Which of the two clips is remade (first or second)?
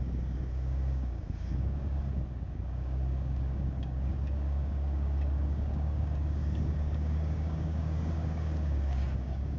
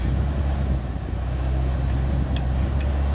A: first